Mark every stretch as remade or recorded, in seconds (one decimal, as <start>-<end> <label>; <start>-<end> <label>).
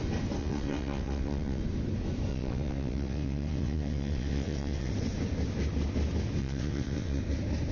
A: 0.0-0.4 recorded; 0.4-1.6 remade; 1.6-2.3 recorded; 2.3-4.9 remade; 4.9-6.4 recorded; 6.4-7.2 remade; 7.2-7.7 recorded